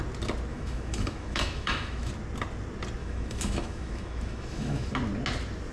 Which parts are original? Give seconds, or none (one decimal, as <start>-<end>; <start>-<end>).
0.0-0.5; 2.1-3.0; 4.9-5.7